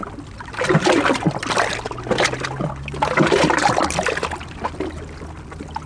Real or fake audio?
real